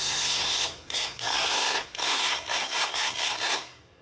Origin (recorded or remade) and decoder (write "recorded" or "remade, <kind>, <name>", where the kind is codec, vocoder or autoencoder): remade, codec, SNAC